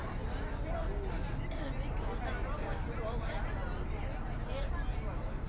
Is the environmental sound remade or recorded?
recorded